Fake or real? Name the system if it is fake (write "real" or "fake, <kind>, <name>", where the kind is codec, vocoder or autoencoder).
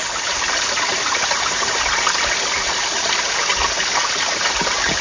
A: real